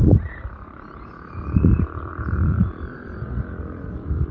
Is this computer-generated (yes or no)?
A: yes